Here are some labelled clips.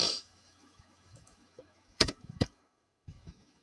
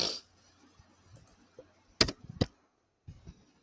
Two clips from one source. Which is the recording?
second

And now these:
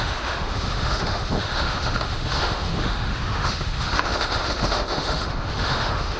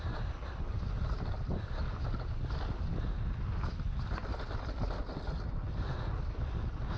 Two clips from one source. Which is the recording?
second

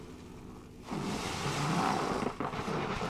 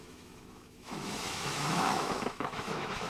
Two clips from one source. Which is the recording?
first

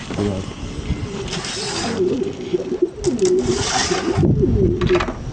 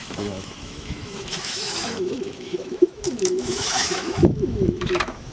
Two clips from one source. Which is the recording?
first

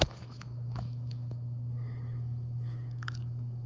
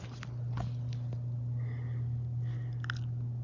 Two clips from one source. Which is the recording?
second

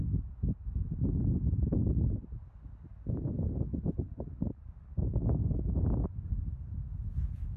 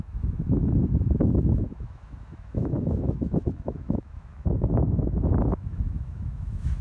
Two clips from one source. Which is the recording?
first